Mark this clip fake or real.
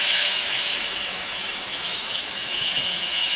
fake